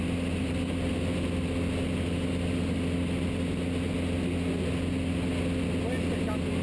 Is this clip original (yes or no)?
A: yes